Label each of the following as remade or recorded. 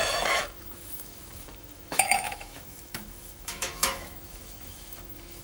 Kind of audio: remade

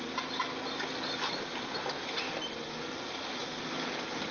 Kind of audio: recorded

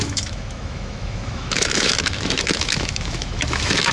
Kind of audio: remade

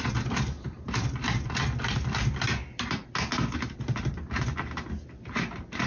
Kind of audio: recorded